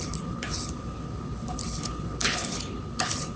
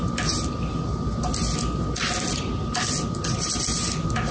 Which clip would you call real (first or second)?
second